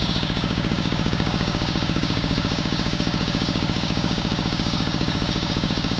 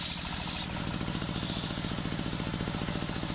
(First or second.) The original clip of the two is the second